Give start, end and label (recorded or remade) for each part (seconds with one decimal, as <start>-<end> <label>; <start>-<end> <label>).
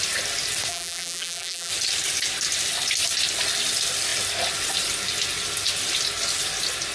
0.0-0.7 recorded; 0.7-1.7 remade; 1.7-6.9 recorded